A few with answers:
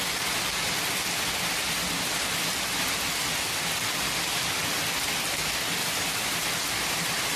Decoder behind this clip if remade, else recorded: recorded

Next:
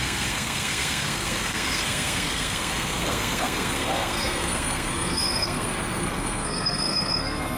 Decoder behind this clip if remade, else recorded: remade, codec, SNAC